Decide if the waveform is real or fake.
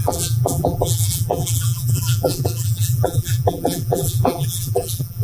fake